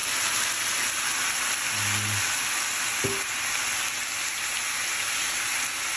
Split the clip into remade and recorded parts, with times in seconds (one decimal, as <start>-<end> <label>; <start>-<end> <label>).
0.0-6.0 recorded